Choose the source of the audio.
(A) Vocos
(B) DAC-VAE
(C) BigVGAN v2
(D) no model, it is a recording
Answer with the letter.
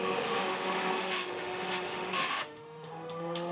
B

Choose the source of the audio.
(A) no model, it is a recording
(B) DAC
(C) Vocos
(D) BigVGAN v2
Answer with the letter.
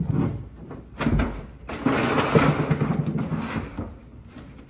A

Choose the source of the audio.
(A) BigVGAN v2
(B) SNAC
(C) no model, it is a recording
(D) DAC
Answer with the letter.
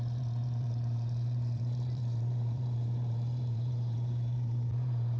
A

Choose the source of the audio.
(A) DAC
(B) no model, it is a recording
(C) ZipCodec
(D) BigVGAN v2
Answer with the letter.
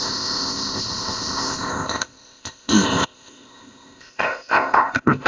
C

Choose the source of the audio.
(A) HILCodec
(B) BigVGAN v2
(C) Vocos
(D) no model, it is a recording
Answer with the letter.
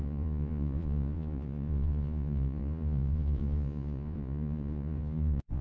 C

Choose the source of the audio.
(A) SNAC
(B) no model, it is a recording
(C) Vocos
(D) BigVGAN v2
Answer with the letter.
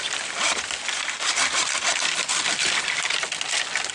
B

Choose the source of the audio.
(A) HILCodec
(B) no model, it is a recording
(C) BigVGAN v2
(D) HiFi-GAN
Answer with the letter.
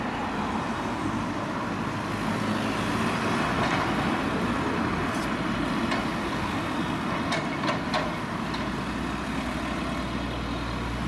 B